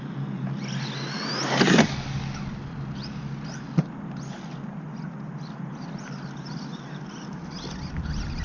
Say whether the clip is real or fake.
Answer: real